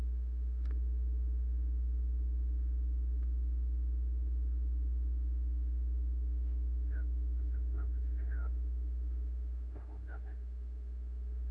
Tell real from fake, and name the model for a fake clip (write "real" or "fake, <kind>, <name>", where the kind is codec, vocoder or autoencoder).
fake, autoencoder, DAC-VAE